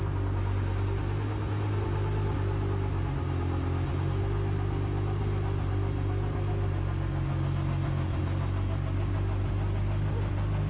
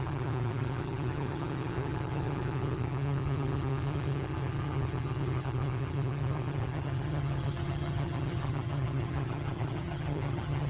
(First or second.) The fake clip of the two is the second